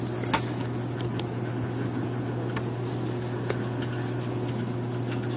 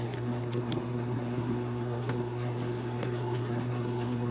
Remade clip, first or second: second